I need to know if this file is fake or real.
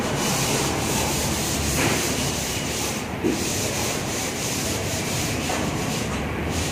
fake